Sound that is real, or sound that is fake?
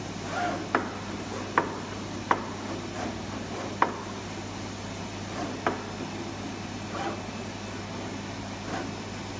real